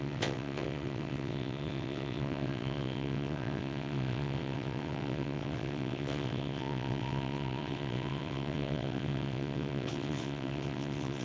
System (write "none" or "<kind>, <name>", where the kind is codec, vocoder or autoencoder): vocoder, WaveNeXt